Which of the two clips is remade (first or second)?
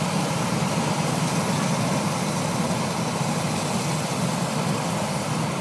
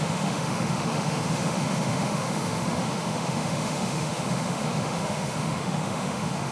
second